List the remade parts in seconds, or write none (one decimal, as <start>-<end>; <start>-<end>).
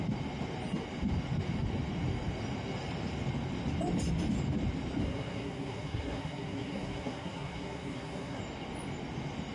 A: 5.0-8.4